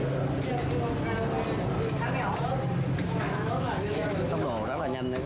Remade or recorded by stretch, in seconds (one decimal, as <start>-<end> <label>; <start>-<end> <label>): 0.0-3.2 recorded; 3.2-5.3 remade